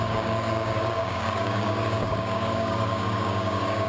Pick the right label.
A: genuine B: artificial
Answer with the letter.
B